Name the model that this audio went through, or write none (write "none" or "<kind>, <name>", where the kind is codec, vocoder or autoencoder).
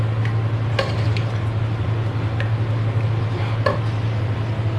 none